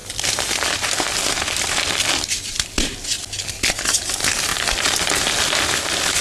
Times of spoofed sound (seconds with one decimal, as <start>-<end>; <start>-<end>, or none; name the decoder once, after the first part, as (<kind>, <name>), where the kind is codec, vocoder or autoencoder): none